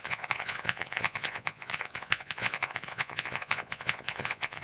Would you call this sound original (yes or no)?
no